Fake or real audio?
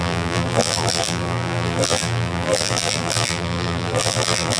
fake